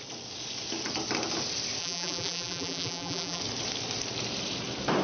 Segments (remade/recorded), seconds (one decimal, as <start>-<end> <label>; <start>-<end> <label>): 0.0-1.8 recorded; 1.8-3.4 remade; 3.4-5.0 recorded